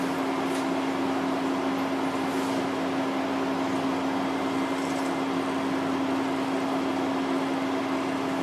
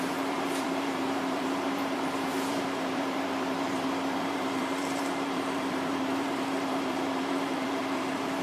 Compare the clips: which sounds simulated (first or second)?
second